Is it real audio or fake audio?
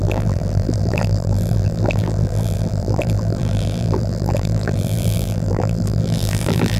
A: fake